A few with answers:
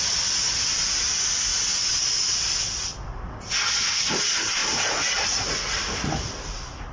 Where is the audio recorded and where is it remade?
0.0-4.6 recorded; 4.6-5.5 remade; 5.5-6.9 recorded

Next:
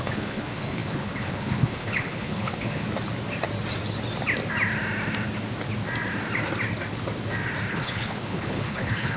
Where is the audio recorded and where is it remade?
0.0-2.8 remade; 2.8-7.7 recorded; 7.7-9.2 remade

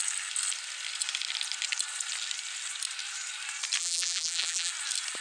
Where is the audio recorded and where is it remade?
0.0-3.8 recorded; 3.8-4.7 remade; 4.7-5.2 recorded

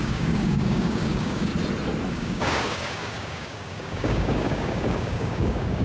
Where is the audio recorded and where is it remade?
0.0-1.5 remade; 1.5-2.1 recorded; 2.1-5.8 remade

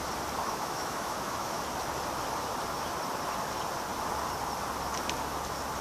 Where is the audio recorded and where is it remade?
0.0-0.4 recorded; 0.4-1.6 remade; 1.6-5.8 recorded

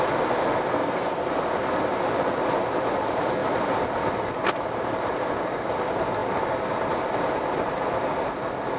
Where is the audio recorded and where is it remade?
0.0-0.7 recorded; 0.7-1.3 remade; 1.3-8.8 recorded